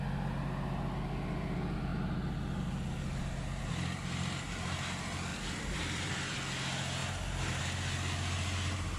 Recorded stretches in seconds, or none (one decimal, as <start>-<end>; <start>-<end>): 0.0-5.3; 6.5-9.0